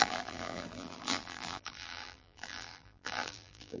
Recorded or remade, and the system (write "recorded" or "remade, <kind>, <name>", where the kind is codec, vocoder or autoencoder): remade, vocoder, BigVGAN v2